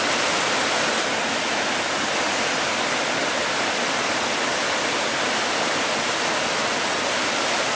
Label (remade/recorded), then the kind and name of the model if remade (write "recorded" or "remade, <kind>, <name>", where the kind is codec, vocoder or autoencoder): recorded